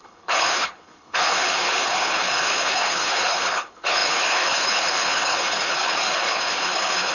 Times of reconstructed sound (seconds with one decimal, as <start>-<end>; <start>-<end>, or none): 0.0-7.1